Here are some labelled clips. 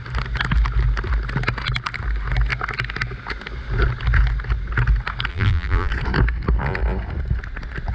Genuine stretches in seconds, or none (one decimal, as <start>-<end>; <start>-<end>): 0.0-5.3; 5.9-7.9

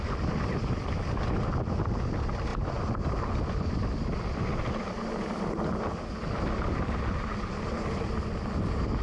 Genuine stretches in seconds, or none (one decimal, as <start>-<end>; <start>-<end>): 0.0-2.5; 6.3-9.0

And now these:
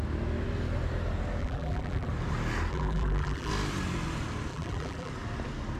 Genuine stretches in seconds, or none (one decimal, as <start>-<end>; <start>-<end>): 0.0-1.4; 2.1-2.7; 3.5-4.5; 5.1-5.8

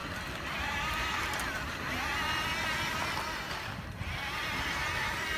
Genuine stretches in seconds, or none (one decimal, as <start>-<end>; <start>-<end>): 2.1-4.1

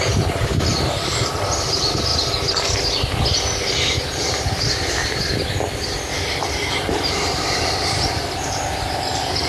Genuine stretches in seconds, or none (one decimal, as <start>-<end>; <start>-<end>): 2.1-3.9; 5.0-6.1